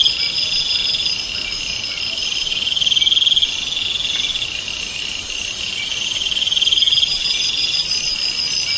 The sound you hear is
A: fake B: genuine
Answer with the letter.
B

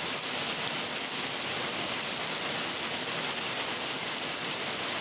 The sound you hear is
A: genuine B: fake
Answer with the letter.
A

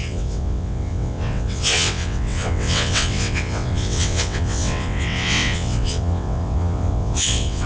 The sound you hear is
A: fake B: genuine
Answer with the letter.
A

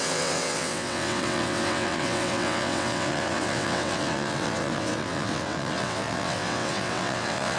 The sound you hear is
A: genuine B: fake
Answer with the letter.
B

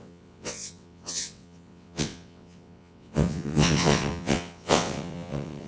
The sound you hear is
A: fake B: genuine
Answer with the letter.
A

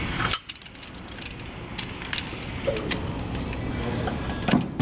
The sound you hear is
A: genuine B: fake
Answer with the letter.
A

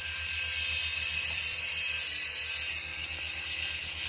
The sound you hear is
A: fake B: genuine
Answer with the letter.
B